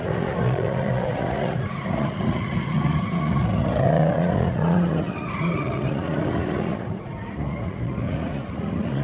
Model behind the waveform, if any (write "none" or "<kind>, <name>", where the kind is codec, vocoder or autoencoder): vocoder, Vocos